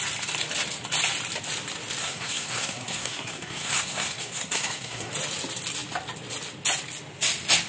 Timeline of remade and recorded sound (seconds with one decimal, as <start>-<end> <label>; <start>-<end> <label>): 0.0-2.0 recorded; 2.0-5.1 remade; 5.1-7.7 recorded